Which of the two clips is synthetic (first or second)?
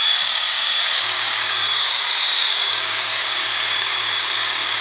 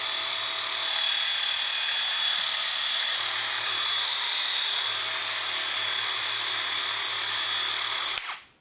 first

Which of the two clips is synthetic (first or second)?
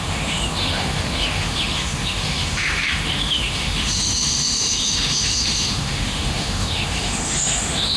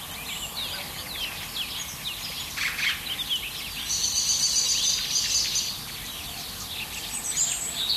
first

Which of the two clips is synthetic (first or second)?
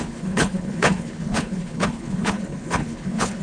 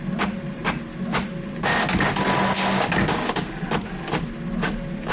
first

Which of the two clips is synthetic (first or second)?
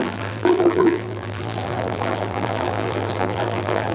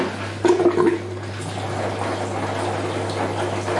first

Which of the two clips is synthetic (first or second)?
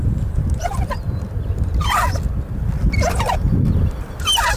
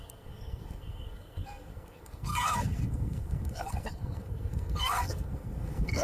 second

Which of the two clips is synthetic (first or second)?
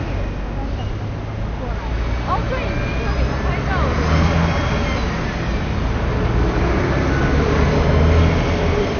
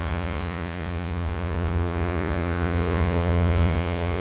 second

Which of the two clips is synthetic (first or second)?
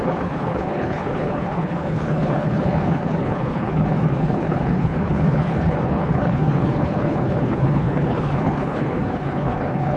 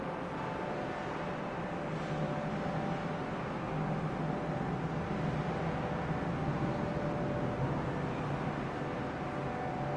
first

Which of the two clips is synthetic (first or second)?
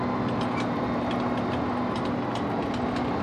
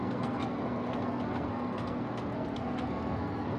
second